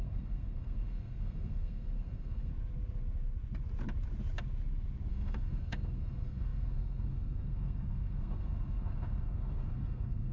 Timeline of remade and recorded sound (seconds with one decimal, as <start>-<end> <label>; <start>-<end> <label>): 0.0-2.5 remade; 2.5-5.1 recorded; 5.1-10.3 remade

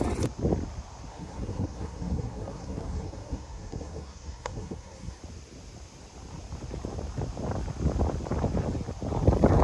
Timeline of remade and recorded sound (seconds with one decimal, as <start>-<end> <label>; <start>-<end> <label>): 0.0-1.1 recorded; 1.1-5.2 remade; 5.2-9.6 recorded

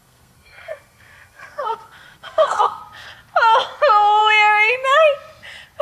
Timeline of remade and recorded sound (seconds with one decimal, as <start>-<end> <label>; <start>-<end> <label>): 0.0-2.8 remade; 2.8-5.8 recorded

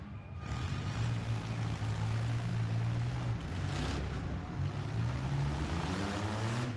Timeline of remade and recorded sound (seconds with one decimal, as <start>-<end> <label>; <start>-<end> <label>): 0.0-6.8 recorded

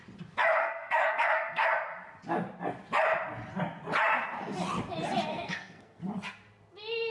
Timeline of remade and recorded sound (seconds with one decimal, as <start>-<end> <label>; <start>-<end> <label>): 0.0-0.6 recorded; 0.6-1.7 remade; 1.7-5.3 recorded; 5.3-6.0 remade; 6.0-7.1 recorded